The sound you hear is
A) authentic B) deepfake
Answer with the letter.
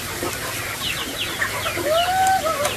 A